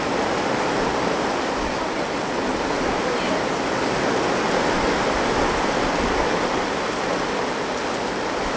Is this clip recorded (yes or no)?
yes